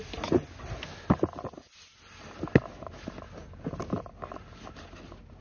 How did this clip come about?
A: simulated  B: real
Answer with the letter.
B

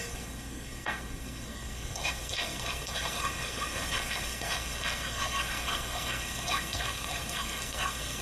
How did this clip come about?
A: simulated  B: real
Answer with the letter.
A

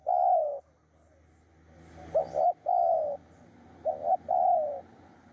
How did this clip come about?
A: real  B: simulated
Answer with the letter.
A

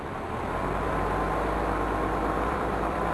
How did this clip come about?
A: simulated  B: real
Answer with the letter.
A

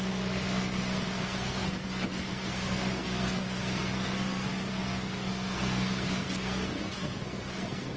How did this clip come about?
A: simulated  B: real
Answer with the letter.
A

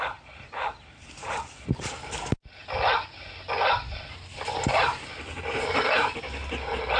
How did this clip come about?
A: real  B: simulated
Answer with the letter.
A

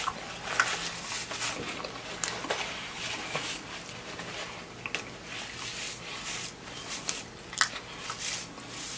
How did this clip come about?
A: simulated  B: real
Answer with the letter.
B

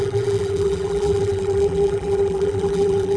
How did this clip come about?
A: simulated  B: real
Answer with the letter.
A